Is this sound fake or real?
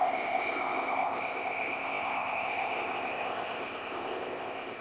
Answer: fake